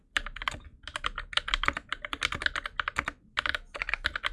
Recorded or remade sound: recorded